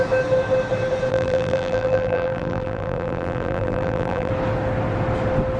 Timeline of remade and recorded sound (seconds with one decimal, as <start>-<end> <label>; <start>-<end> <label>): 0.0-1.1 recorded; 1.1-4.3 remade; 4.3-5.6 recorded